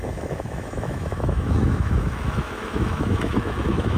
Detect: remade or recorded remade